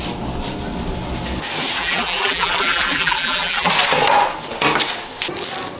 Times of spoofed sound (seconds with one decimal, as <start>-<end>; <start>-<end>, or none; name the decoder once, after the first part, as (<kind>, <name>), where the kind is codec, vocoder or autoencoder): 1.8-3.7 (vocoder, BigVGAN v2)